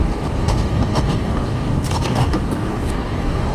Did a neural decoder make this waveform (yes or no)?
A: yes